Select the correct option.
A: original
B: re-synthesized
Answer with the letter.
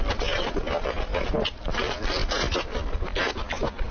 A